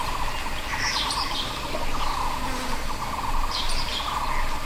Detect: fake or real real